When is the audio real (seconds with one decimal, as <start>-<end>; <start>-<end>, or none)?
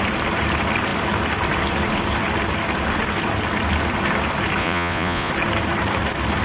0.0-4.6; 5.3-6.4